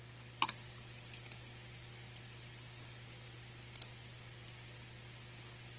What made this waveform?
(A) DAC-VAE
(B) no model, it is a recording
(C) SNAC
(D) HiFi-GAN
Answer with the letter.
B